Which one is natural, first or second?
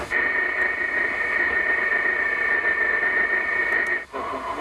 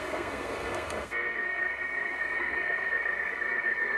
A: first